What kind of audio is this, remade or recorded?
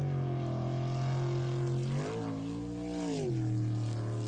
recorded